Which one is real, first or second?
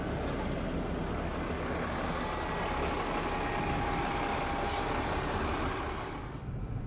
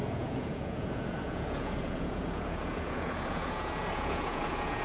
first